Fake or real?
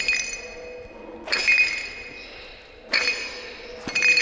real